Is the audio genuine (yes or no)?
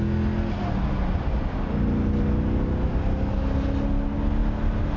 yes